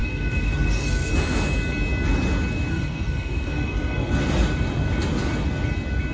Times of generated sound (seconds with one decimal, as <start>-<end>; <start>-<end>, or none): 0.0-1.1; 2.7-4.1